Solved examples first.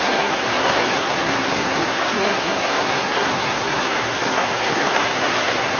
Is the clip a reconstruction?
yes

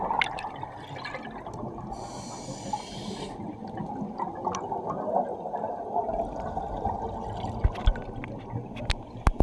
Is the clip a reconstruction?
no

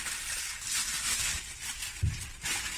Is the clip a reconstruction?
no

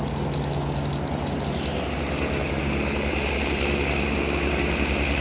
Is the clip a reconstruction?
no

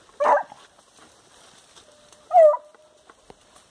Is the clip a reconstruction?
no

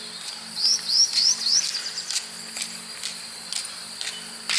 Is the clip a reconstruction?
no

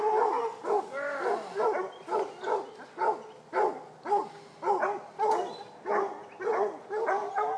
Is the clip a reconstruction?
no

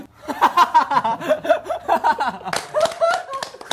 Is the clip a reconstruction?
no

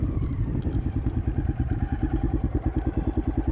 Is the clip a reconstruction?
no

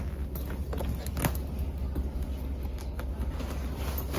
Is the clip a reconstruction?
no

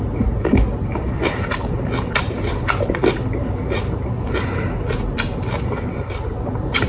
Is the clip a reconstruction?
no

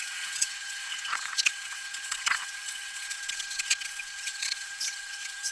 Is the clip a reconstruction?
yes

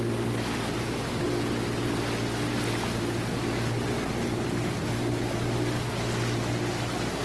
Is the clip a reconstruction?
no